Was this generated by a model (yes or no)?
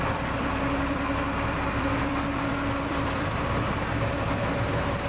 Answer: yes